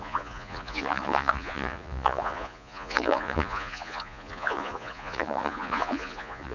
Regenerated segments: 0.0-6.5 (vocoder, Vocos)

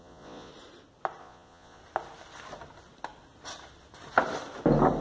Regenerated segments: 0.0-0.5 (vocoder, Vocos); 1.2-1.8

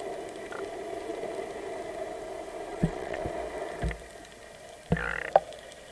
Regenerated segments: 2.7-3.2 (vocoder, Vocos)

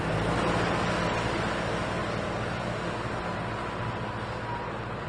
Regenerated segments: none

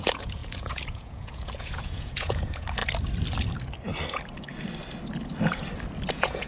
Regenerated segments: 0.0-2.8 (vocoder, Vocos); 6.1-6.5

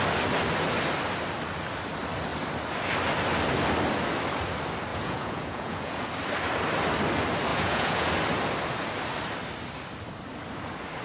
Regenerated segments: 4.9-6.1 (vocoder, Vocos); 7.5-8.1

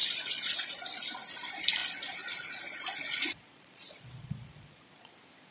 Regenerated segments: 0.0-0.8 (vocoder, Vocos); 1.8-5.1